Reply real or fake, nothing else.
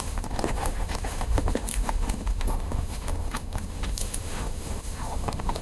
fake